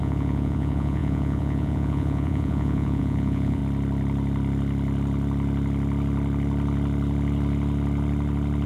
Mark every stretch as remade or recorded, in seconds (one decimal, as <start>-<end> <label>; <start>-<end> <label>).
0.0-3.6 remade; 3.6-8.7 recorded